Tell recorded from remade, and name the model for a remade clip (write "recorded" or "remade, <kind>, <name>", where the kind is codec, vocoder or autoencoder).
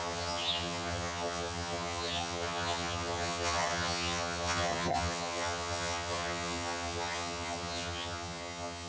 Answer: remade, vocoder, HiFi-GAN